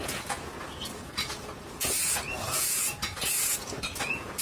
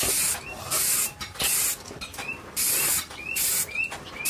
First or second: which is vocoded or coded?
first